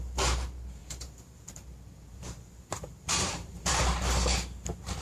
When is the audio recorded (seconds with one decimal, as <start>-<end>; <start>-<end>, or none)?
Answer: 0.0-0.8; 3.8-5.0